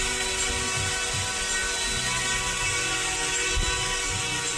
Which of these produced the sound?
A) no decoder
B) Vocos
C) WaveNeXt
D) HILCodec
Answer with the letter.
A